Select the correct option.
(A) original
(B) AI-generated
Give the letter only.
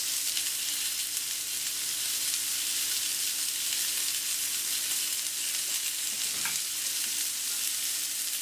A